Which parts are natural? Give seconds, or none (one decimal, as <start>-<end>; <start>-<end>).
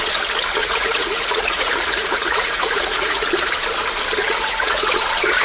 0.0-0.6; 3.3-4.2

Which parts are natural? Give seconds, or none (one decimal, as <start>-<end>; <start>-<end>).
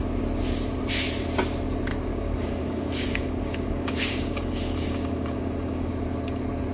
0.0-1.9; 5.9-6.7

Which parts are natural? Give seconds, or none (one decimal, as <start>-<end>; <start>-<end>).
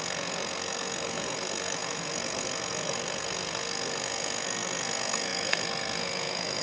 none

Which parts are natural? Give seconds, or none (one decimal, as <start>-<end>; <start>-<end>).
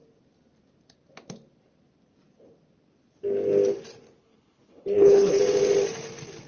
0.0-4.2; 5.4-6.5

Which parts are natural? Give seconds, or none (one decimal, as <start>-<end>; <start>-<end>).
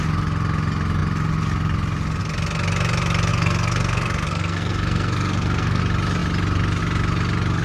0.0-3.3; 5.8-7.6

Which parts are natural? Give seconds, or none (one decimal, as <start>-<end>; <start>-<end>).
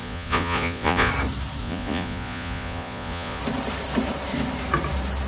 1.1-1.6; 3.4-5.3